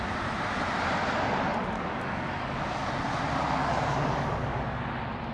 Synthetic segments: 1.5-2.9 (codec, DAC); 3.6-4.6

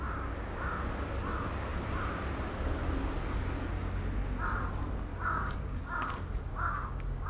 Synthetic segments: 5.1-6.1 (codec, DAC); 6.5-7.3

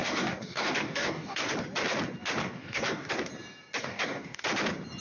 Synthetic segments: 0.0-1.5 (codec, DAC); 2.4-3.1; 3.8-4.4

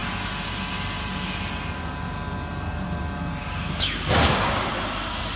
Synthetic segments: 3.4-4.7 (codec, DAC)